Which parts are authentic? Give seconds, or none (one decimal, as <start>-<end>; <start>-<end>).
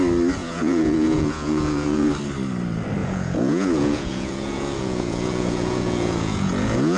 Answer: 0.0-0.4; 2.1-3.0